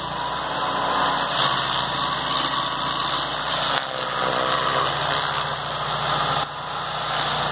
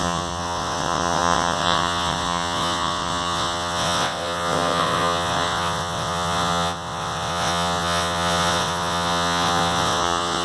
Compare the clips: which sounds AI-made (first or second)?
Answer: second